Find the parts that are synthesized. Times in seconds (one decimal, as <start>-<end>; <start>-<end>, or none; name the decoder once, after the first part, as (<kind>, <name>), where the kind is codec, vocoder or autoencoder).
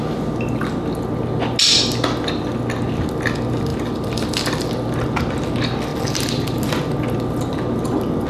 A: 3.7-4.7 (vocoder, BigVGAN v2); 5.9-6.6